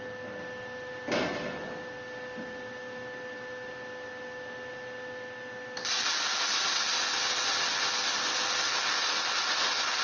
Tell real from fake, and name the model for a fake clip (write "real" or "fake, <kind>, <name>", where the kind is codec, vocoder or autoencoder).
real